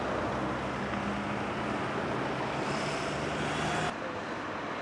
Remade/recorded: recorded